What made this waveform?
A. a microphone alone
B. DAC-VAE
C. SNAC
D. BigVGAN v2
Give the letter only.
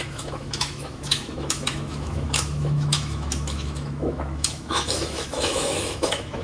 B